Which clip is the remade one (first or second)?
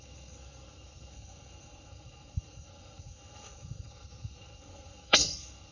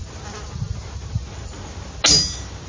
first